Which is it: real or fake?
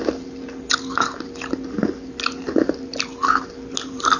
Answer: real